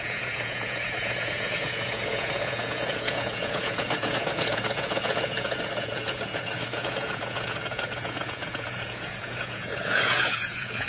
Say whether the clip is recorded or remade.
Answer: remade